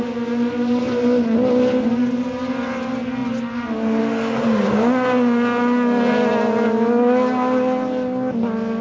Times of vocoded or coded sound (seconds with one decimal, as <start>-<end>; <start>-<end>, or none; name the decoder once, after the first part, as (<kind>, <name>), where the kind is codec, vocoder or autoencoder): none